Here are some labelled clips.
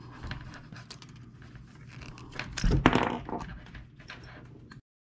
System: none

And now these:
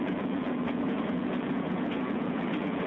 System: vocoder, Vocos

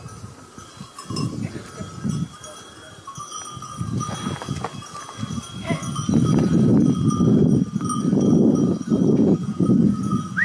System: none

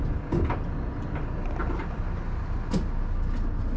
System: none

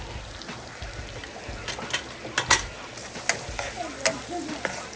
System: none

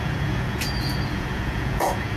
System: vocoder, Vocos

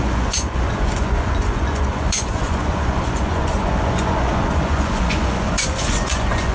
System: vocoder, Vocos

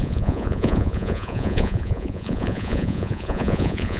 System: vocoder, Vocos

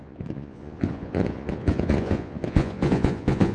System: vocoder, Vocos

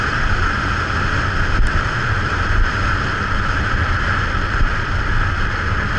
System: none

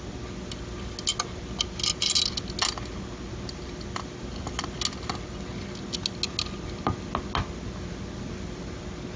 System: none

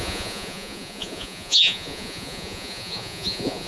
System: vocoder, Vocos